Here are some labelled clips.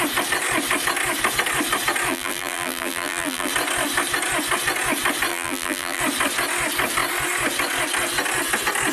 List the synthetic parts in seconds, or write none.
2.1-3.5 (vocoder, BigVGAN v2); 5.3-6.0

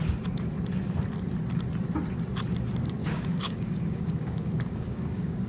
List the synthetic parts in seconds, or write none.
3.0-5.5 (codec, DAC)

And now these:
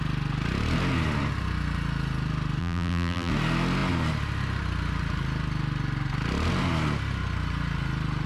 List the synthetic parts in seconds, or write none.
2.6-3.3 (vocoder, BigVGAN v2)

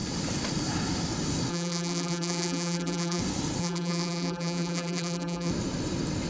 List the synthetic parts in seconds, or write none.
1.5-3.2 (vocoder, BigVGAN v2); 3.6-5.5